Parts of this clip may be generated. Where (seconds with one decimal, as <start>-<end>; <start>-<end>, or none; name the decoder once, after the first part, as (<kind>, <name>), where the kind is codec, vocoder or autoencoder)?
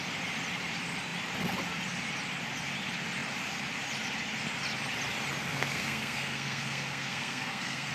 5.5-7.9 (codec, SNAC)